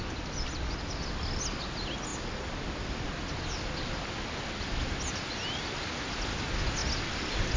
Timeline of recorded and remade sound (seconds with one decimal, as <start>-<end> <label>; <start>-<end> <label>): 0.0-7.6 recorded